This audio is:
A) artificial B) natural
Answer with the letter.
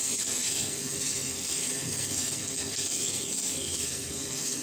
A